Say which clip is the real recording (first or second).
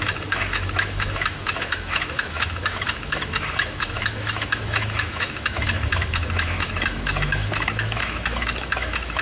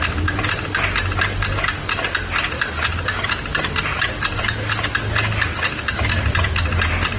second